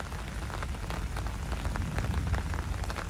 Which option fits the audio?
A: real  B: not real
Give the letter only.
A